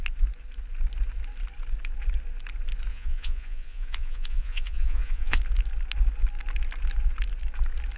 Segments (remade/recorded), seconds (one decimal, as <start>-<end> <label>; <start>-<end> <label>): 0.0-2.9 recorded; 2.9-5.4 remade; 5.4-8.0 recorded